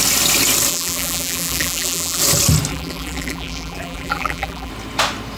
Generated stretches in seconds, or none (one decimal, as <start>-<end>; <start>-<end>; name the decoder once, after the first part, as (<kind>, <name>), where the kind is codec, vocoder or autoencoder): 0.7-2.2 (vocoder, BigVGAN v2); 2.7-4.7